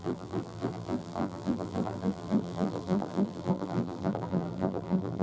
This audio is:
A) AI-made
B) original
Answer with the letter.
A